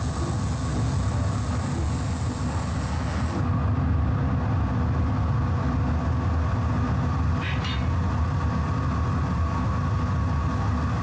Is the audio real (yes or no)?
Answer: yes